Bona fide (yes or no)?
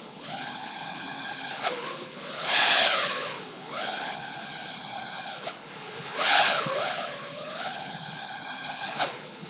no